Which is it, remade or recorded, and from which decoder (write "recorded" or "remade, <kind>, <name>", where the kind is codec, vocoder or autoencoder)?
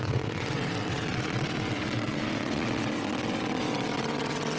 remade, vocoder, WaveNeXt